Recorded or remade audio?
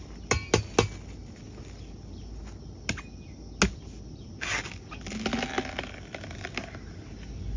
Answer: recorded